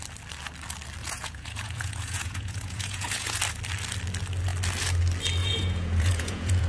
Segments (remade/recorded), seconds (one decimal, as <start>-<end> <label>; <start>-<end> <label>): 0.0-1.0 recorded; 1.0-3.4 remade; 3.4-5.4 recorded; 5.4-6.7 remade